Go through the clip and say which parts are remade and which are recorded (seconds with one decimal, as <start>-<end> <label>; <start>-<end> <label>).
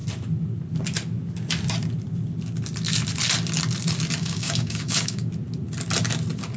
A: 0.0-4.2 recorded; 4.2-5.3 remade; 5.3-6.6 recorded